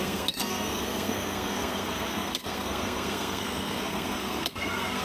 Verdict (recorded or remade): remade